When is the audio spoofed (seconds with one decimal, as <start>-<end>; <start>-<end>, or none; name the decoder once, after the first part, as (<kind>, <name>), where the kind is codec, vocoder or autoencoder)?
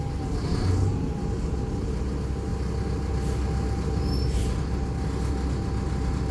none